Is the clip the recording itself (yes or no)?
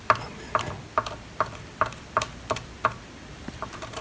yes